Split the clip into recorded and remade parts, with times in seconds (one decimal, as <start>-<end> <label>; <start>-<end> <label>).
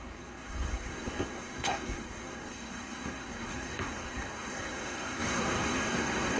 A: 0.0-6.4 remade